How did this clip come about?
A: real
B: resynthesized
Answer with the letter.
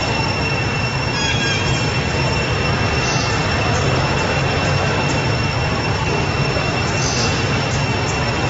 A